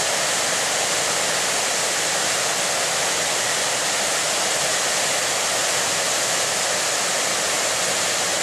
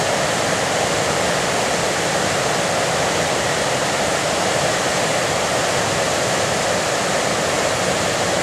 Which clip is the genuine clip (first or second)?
first